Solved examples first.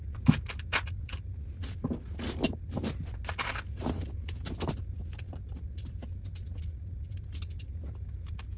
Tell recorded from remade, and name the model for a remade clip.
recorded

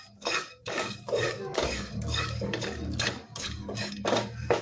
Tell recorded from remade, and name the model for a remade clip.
remade, codec, DAC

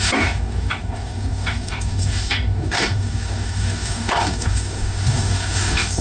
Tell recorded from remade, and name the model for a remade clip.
remade, codec, DAC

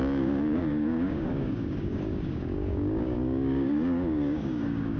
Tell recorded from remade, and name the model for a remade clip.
remade, codec, DAC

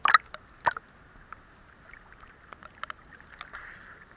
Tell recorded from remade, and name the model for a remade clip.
recorded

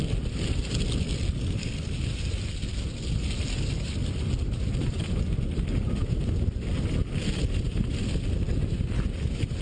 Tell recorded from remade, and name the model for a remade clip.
recorded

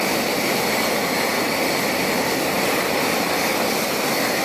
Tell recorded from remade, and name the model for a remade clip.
recorded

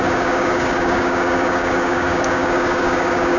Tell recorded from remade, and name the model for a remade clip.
remade, codec, DAC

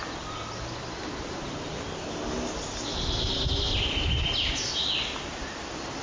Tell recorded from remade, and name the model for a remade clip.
recorded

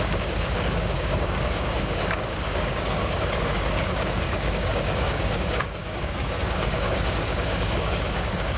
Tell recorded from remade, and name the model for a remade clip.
remade, codec, DAC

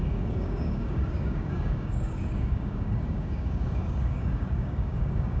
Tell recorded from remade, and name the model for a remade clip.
remade, codec, DAC